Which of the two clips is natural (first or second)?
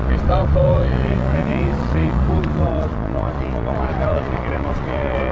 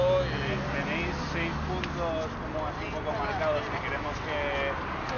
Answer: second